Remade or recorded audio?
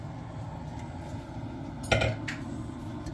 recorded